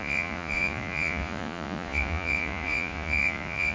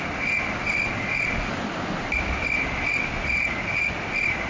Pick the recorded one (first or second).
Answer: second